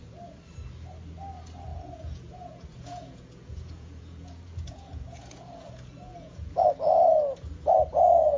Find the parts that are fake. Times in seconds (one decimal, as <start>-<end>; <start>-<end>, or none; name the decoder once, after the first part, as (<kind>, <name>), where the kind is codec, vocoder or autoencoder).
1.7-6.7 (vocoder, Vocos)